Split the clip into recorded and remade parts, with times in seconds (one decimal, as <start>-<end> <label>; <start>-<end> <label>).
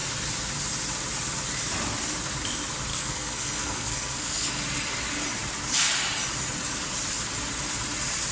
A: 0.0-2.9 recorded; 2.9-4.5 remade; 4.5-8.3 recorded